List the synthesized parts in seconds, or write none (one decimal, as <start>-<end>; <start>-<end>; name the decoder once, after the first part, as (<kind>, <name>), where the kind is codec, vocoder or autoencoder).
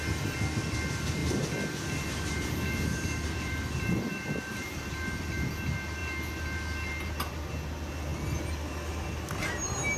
1.2-5.5 (vocoder, BigVGAN v2)